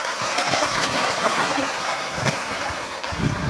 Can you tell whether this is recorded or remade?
remade